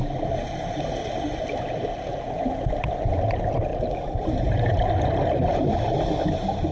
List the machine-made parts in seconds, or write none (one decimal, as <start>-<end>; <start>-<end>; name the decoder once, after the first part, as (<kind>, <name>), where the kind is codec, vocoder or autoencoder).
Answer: 3.7-4.9 (vocoder, BigVGAN v2)